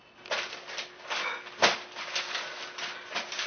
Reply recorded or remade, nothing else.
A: recorded